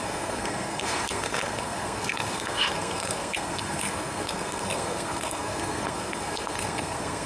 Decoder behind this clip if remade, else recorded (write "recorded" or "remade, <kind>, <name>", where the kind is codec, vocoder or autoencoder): remade, codec, SNAC